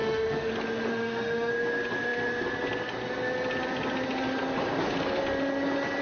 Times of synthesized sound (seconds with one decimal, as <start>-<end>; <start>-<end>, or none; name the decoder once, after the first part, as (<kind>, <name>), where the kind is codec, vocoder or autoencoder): 0.0-0.5 (autoencoder, DAC-VAE); 0.9-1.5